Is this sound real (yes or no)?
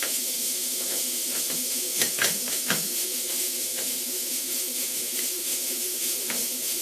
no